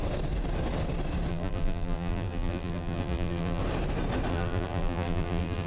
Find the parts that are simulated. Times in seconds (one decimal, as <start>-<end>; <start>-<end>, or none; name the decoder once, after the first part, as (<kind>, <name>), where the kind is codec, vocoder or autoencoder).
1.3-3.6 (vocoder, BigVGAN v2); 4.3-5.7